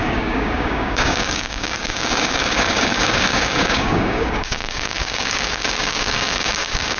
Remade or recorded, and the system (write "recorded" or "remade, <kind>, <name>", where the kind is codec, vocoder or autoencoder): remade, codec, DAC